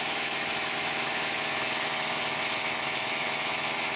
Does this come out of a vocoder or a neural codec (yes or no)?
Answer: yes